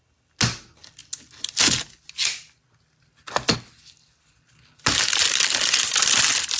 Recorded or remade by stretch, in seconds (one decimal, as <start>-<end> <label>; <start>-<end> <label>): 0.0-6.6 recorded